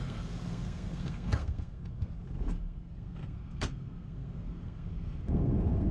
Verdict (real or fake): fake